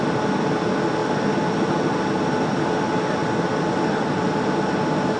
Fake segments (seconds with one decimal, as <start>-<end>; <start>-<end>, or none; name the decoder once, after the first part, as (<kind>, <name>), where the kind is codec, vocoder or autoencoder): none

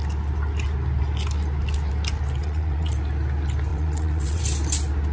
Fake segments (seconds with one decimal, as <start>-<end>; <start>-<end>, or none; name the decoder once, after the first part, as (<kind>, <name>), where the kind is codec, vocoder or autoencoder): 2.4-2.9 (vocoder, WaveNeXt); 3.7-4.4

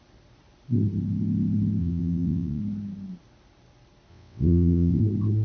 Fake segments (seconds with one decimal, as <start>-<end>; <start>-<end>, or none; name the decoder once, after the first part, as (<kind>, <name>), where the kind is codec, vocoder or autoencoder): 1.8-2.6 (vocoder, WaveNeXt); 4.1-5.0

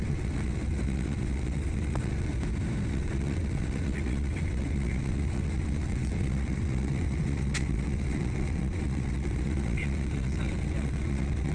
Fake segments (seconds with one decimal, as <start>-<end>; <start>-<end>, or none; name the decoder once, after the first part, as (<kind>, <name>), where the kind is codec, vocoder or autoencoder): 0.0-2.3 (vocoder, WaveNeXt); 2.9-11.5

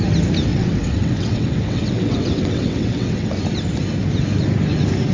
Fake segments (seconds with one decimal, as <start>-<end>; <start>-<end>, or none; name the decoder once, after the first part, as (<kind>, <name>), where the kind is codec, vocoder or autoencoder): 0.5-3.3 (vocoder, WaveNeXt)

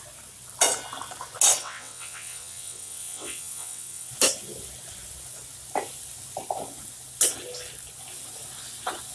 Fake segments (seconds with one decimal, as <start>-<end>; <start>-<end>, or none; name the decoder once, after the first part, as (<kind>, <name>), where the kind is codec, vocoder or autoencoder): 1.6-4.1 (vocoder, WaveNeXt)

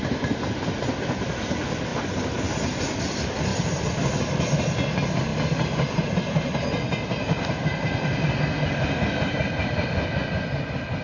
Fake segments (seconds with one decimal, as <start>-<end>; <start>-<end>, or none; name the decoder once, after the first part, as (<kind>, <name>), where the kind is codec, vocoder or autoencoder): none